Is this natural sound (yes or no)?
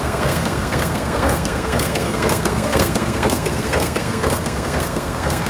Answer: no